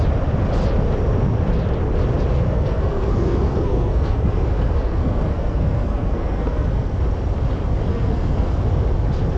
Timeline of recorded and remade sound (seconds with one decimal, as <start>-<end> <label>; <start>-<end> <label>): 0.0-2.3 recorded; 2.3-7.0 remade; 7.0-7.9 recorded; 7.9-8.6 remade; 8.6-9.4 recorded